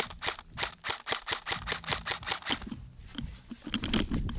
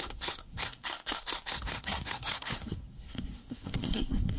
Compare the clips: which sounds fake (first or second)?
second